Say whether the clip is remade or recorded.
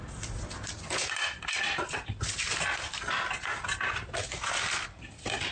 recorded